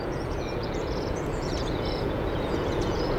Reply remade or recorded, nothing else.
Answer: remade